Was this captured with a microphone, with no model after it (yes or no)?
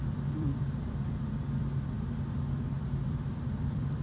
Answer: no